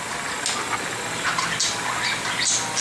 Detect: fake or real real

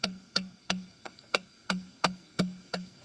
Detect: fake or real fake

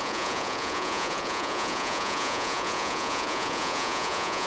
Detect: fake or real fake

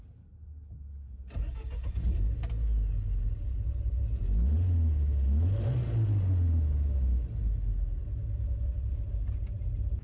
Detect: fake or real real